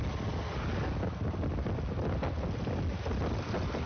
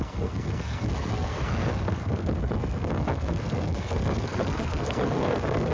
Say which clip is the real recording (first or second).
first